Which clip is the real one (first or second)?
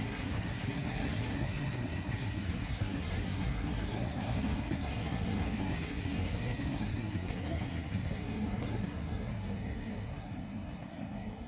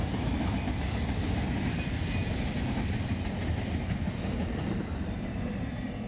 second